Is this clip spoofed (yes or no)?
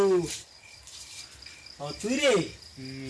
no